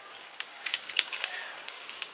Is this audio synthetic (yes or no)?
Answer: yes